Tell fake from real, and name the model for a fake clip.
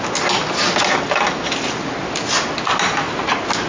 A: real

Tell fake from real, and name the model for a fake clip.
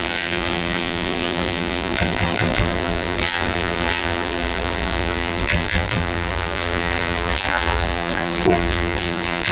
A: fake, vocoder, BigVGAN v2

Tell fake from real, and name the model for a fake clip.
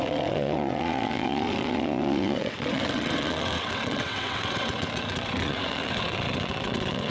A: fake, vocoder, WaveNeXt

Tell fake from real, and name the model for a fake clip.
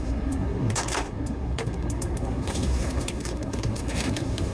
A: fake, codec, SNAC